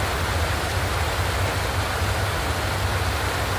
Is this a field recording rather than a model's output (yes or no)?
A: yes